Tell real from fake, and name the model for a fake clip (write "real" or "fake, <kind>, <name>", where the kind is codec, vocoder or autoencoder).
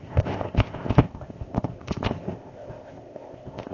fake, codec, ZipCodec